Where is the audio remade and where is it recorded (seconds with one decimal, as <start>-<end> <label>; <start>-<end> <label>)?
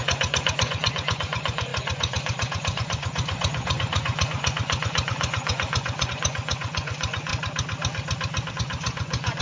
0.0-7.3 remade; 7.3-8.5 recorded; 8.5-9.4 remade